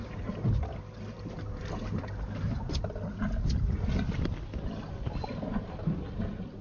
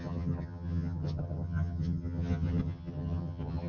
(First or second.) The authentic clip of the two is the first